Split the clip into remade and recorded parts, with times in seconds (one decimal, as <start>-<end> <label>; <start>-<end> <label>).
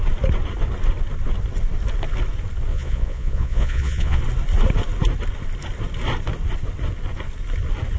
0.0-2.7 recorded; 2.7-4.2 remade; 4.2-8.0 recorded